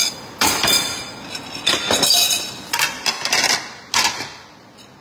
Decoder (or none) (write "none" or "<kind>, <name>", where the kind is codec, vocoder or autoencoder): none